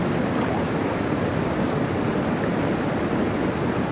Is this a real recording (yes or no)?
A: yes